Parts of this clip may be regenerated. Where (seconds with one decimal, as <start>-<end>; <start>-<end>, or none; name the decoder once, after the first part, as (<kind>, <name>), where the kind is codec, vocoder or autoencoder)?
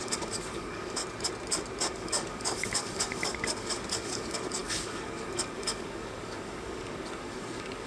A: 0.0-1.0 (codec, DAC); 1.8-7.9